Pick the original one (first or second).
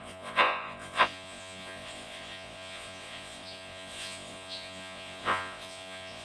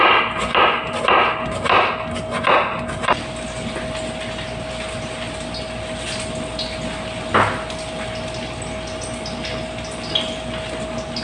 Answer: second